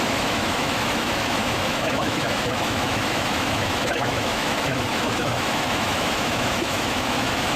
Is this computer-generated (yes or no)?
yes